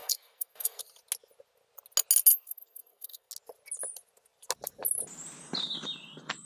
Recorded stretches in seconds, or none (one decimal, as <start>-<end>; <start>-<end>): 0.8-2.3; 3.3-6.4